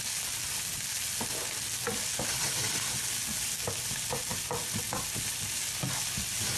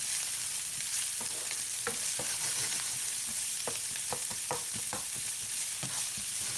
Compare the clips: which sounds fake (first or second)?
second